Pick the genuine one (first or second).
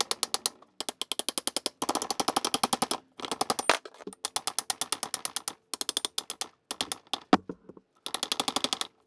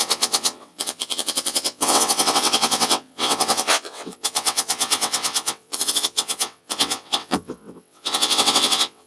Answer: first